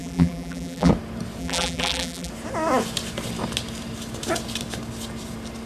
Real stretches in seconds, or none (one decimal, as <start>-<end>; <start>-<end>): 0.9-1.4; 2.3-5.7